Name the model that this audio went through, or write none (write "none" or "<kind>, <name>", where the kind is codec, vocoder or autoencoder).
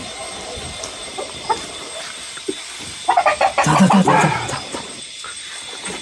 vocoder, BigVGAN v2